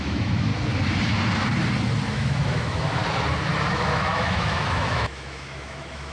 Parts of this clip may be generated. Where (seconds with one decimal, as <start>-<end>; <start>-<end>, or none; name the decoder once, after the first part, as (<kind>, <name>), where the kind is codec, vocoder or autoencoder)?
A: 0.0-0.5 (autoencoder, DAC-VAE); 2.1-3.0; 3.7-6.1